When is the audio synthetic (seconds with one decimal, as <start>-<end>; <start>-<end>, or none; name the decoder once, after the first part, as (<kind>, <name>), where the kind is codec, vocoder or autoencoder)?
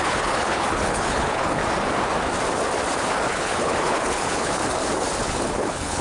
0.0-1.6 (codec, HILCodec); 3.1-4.6; 5.2-6.0